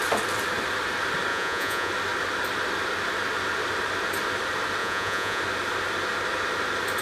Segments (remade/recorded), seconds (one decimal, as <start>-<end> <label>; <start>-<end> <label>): 0.0-1.3 recorded; 1.3-1.9 remade; 1.9-4.8 recorded; 4.8-5.4 remade; 5.4-7.0 recorded